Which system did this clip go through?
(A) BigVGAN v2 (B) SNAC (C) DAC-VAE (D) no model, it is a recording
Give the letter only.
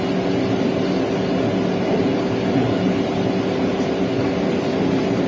D